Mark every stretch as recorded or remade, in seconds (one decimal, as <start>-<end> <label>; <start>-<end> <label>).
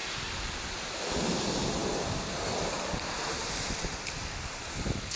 0.0-5.2 recorded